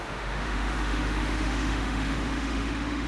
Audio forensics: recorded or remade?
remade